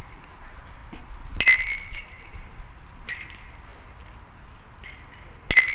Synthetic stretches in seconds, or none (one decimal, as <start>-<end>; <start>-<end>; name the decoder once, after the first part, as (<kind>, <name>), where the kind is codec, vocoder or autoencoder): none